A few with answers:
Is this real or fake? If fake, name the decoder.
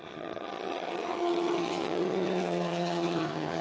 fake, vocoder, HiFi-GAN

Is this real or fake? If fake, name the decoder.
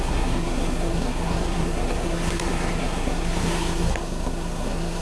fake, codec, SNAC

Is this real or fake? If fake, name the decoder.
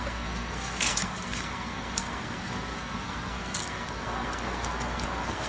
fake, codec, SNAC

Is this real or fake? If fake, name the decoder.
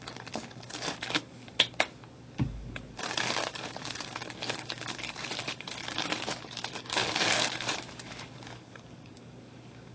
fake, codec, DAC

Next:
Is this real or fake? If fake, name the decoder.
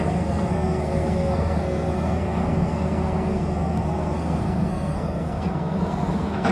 fake, codec, SNAC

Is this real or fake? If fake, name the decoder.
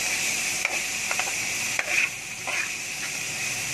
fake, vocoder, BigVGAN v2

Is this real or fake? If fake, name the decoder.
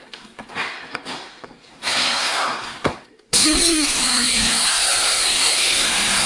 fake, codec, SNAC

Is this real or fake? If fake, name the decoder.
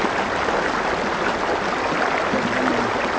real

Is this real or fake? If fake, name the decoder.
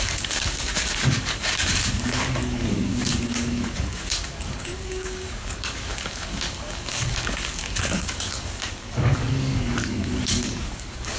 fake, codec, DAC